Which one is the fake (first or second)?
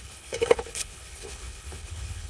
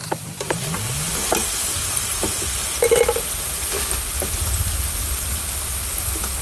first